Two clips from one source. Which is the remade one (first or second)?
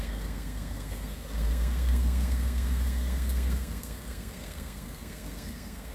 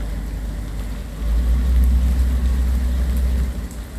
first